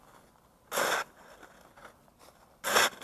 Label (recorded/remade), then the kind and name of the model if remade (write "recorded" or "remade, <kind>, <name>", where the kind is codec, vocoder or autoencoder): recorded